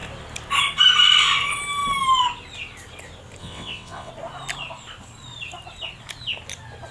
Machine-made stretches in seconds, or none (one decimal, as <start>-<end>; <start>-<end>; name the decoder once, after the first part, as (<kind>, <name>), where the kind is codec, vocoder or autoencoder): 3.4-4.1 (vocoder, WaveNeXt)